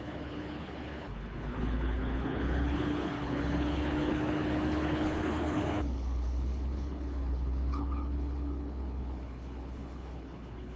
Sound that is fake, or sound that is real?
fake